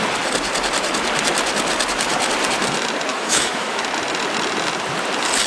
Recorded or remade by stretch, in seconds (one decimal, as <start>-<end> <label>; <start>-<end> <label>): 0.0-3.1 recorded; 3.1-3.8 remade; 3.8-5.5 recorded